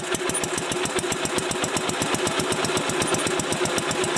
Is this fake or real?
real